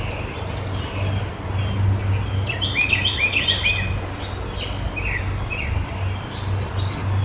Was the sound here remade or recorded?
recorded